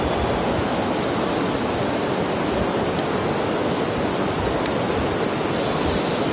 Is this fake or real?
real